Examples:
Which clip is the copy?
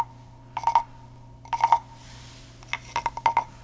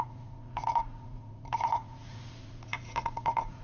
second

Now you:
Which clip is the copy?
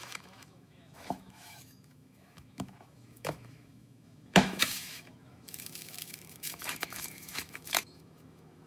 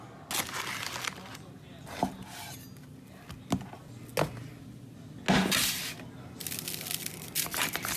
first